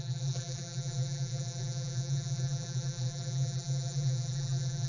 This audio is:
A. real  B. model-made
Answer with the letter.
B